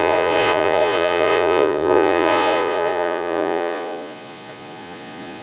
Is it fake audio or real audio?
fake